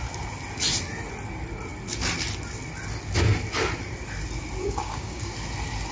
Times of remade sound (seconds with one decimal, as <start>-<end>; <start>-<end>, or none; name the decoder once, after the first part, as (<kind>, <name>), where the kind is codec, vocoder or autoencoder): 4.6-5.3 (codec, DAC)